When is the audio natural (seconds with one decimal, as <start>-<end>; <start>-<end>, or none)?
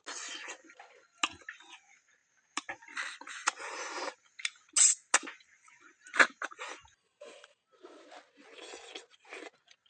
0.0-9.9